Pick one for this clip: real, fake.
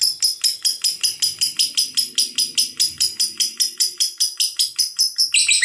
real